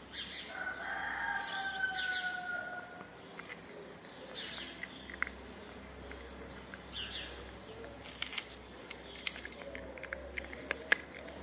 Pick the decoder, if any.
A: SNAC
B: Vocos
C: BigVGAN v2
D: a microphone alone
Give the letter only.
D